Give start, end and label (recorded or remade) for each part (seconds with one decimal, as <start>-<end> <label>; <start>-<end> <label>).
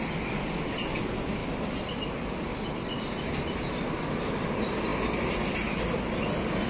0.0-6.7 recorded